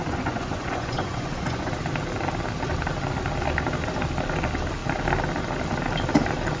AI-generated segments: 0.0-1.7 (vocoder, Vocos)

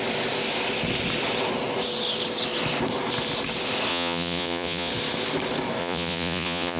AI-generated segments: 3.9-4.9 (vocoder, Vocos); 5.8-6.8

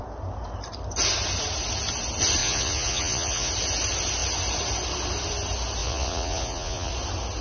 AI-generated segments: 2.4-3.5 (vocoder, Vocos); 5.8-6.9

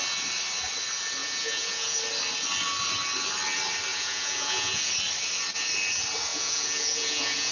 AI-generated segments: 1.2-2.0 (vocoder, Vocos); 3.9-4.9; 6.3-7.5

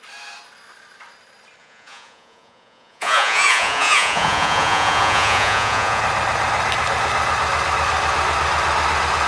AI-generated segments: 1.6-6.0 (vocoder, Vocos)

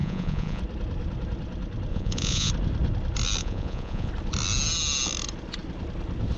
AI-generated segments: 0.0-0.6 (vocoder, Vocos); 1.9-2.5; 3.4-4.1

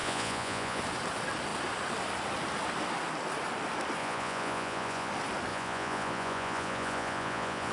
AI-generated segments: 0.0-0.8 (vocoder, Vocos); 4.0-5.1; 5.5-7.7